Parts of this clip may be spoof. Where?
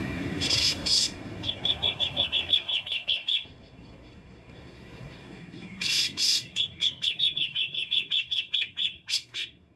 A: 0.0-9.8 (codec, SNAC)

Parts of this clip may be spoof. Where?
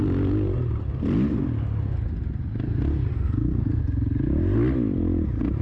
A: 3.1-3.8 (codec, SNAC)